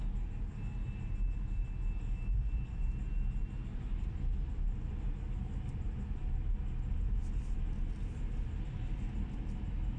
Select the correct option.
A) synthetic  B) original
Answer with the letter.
B